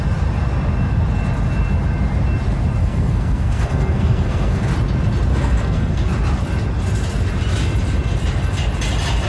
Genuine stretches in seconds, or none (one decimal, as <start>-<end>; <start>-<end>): 0.0-2.8; 4.7-5.3; 6.0-9.3